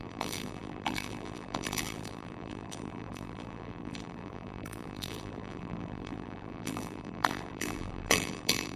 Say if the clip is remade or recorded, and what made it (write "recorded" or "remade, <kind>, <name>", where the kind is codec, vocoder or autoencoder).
remade, vocoder, BigVGAN v2